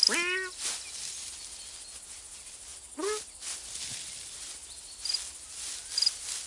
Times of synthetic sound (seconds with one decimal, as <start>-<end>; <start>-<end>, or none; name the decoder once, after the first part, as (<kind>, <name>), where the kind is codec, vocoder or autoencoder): none